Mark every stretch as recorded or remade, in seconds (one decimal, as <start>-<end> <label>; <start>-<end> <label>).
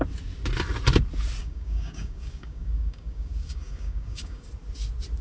0.0-1.4 recorded; 1.4-4.5 remade; 4.5-5.2 recorded